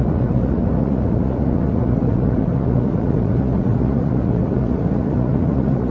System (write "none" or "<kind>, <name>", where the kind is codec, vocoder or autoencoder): vocoder, Vocos